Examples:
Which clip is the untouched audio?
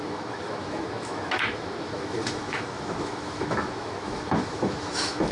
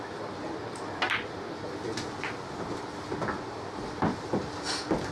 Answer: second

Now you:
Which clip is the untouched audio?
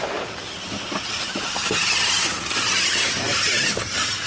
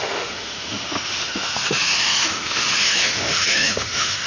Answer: first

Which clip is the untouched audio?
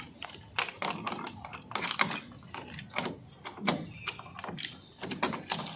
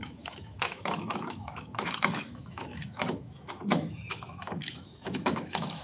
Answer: first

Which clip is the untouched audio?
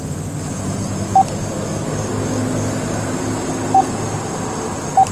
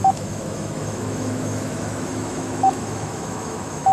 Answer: first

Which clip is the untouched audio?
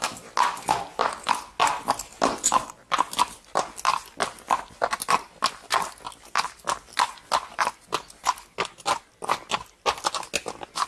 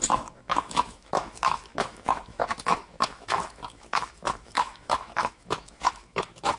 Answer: first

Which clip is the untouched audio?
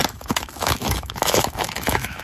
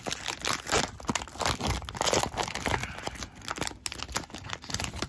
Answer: second